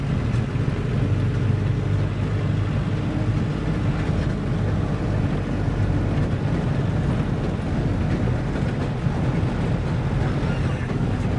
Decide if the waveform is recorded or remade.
recorded